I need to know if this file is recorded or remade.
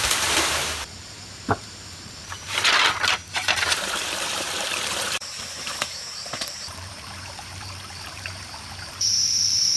remade